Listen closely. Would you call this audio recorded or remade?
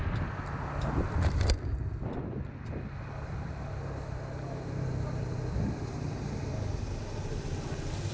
recorded